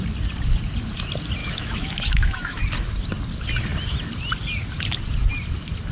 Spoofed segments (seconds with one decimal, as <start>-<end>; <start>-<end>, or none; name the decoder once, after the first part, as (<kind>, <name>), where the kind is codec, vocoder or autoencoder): 1.4-2.6 (autoencoder, DAC-VAE)